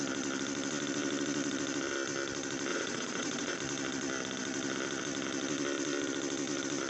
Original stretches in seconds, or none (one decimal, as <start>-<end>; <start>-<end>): 0.0-2.7; 3.6-6.9